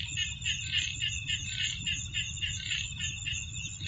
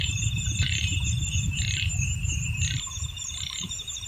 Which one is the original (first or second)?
first